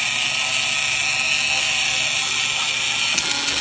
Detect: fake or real real